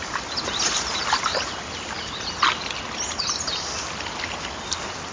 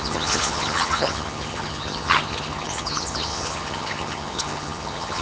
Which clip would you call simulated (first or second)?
second